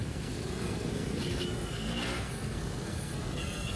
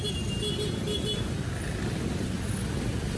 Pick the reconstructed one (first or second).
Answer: first